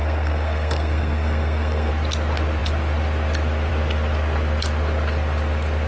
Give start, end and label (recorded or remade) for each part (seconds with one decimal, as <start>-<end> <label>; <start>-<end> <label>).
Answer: 0.0-1.9 remade; 1.9-5.9 recorded